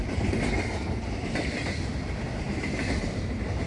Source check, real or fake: fake